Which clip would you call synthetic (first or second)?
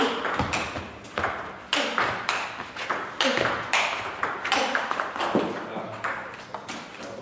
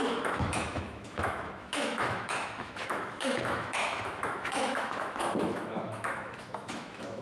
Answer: second